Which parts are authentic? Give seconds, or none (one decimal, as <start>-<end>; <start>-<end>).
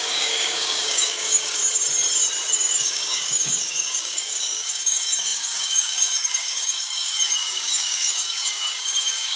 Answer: 1.6-2.5